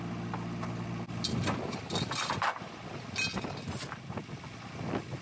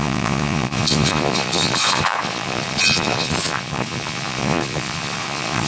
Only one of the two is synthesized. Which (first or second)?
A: second